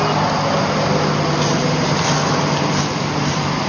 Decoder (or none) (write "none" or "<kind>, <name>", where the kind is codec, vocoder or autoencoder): none